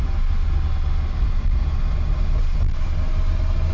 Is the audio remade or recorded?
recorded